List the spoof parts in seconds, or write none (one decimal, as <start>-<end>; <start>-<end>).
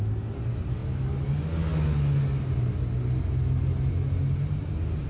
none